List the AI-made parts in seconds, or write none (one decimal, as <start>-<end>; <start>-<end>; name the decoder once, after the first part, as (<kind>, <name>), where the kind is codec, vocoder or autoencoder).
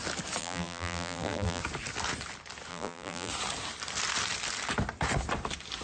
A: 0.4-1.6 (vocoder, BigVGAN v2); 2.7-3.3